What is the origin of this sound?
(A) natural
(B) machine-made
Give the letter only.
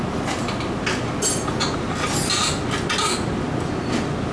A